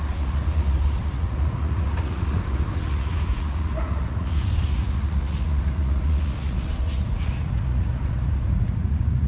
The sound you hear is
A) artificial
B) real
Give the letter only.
A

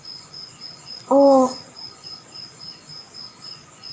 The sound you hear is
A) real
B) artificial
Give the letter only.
B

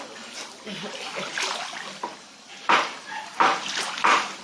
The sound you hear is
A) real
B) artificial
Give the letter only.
A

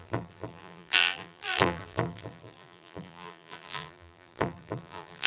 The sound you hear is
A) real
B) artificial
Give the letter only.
B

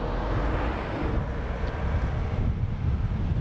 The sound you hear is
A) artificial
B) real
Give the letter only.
B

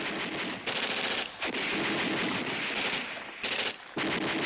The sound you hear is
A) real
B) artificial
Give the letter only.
A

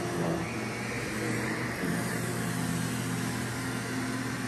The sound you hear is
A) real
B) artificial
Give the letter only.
A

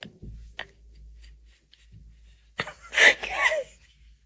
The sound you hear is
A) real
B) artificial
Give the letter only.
A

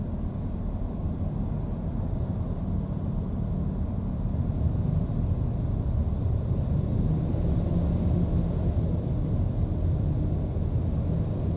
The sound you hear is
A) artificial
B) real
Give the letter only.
B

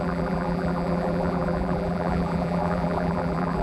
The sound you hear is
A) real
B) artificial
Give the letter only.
B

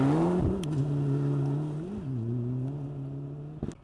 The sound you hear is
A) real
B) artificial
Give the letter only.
A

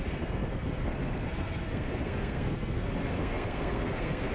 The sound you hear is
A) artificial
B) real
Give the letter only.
A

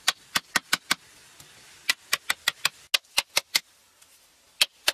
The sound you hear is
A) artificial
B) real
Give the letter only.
B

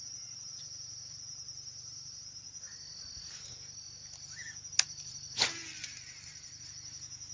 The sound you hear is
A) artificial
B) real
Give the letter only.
B